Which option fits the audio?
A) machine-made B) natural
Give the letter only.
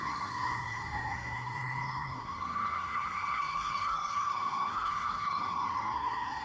A